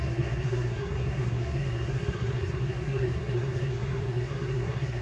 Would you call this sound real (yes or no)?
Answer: no